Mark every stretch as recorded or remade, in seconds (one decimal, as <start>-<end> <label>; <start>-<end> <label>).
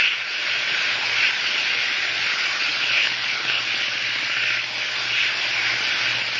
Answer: 0.0-2.7 recorded; 2.7-3.6 remade; 3.6-6.4 recorded